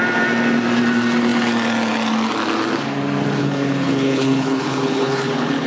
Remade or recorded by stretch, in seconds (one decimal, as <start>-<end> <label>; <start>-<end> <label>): 0.0-3.4 recorded; 3.4-5.7 remade